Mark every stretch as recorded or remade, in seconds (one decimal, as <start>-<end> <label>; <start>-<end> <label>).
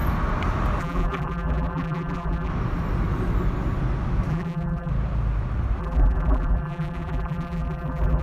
0.0-0.8 recorded; 0.8-2.5 remade; 2.5-4.3 recorded; 4.3-4.9 remade; 4.9-5.8 recorded; 5.8-8.2 remade